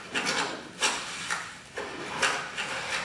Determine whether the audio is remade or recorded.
recorded